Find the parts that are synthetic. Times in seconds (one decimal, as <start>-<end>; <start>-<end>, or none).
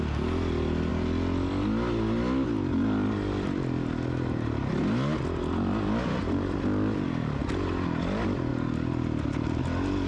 none